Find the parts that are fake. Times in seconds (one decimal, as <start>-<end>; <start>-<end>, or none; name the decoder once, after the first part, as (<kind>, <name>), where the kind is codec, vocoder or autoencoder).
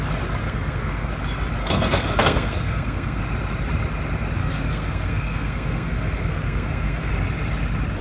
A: 0.4-1.1 (codec, SNAC); 1.6-3.2; 4.4-7.1